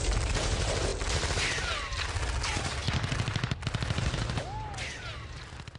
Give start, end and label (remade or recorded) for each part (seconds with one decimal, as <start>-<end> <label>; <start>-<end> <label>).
0.0-5.8 recorded

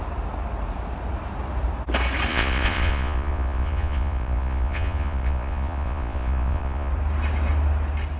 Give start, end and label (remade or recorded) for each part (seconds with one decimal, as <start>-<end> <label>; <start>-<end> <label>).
0.0-2.3 recorded; 2.3-6.9 remade; 6.9-8.2 recorded

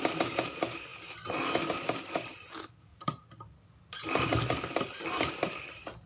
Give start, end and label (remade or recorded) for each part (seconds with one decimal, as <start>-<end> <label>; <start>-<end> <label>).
0.0-0.9 remade; 0.9-1.7 recorded; 1.7-2.9 remade; 2.9-4.1 recorded; 4.1-6.1 remade

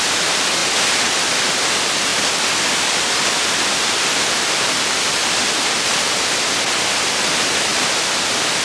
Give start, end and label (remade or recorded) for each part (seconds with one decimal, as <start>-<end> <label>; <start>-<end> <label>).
0.0-8.6 recorded

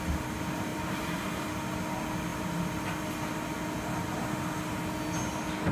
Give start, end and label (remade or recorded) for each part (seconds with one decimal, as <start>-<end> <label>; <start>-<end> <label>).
0.0-0.7 recorded; 0.7-1.5 remade; 1.5-5.7 recorded

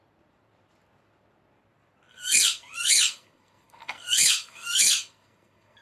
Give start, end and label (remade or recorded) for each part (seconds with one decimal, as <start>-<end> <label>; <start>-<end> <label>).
0.0-2.1 recorded; 2.1-5.8 remade

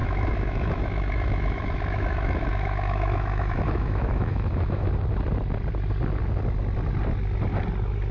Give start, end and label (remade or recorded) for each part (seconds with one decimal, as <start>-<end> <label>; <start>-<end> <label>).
0.0-4.9 remade; 4.9-8.1 recorded

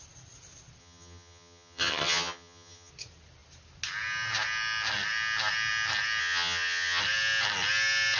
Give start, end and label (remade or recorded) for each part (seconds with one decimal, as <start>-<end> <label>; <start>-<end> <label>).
0.0-0.8 recorded; 0.8-2.9 remade; 2.9-6.2 recorded; 6.2-7.0 remade; 7.0-8.2 recorded